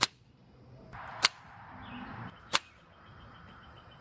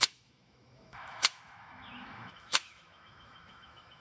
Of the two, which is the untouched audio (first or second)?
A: first